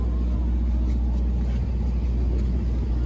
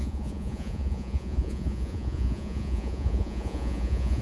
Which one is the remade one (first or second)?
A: second